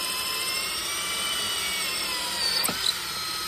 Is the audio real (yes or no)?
yes